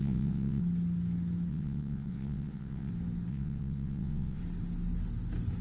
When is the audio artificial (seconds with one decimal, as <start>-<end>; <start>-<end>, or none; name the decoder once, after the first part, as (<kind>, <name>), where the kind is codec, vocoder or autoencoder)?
0.0-0.6 (vocoder, WaveNeXt); 1.5-2.9; 3.3-4.4